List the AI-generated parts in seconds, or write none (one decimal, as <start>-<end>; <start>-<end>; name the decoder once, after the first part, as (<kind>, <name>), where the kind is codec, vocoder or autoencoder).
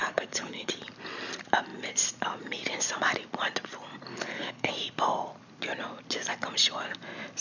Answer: 0.0-0.7 (codec, HILCodec); 4.1-4.7